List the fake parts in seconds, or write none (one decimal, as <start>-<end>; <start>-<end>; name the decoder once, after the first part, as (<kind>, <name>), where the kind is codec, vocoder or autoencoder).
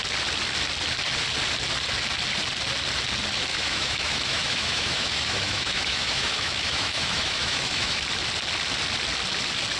3.5-8.0 (autoencoder, DAC-VAE)